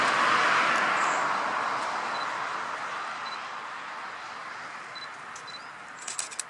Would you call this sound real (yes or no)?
yes